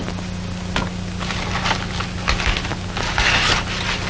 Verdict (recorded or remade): recorded